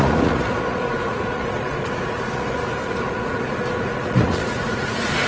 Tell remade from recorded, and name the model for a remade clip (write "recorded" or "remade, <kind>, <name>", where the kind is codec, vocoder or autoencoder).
remade, vocoder, Vocos